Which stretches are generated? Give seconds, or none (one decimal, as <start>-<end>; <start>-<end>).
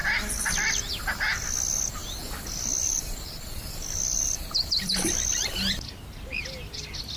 2.0-6.0